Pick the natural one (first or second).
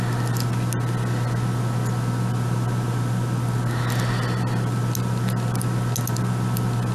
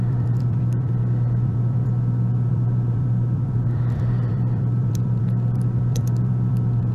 first